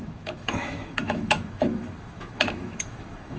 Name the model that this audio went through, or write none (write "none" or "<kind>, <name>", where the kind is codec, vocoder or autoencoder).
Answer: autoencoder, DAC-VAE